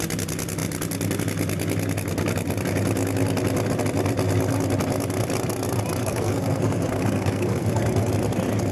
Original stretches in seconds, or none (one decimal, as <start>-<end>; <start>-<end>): 0.0-6.0; 8.1-8.7